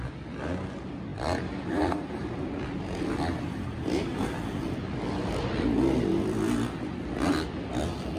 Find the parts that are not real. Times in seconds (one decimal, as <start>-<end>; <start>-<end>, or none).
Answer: none